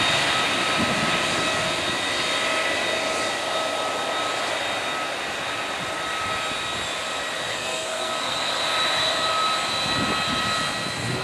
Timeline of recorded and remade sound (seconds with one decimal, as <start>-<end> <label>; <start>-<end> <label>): 0.0-7.5 recorded; 7.5-8.5 remade; 8.5-11.2 recorded